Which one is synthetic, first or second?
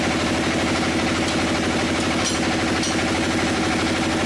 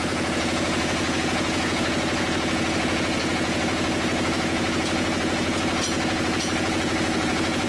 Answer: second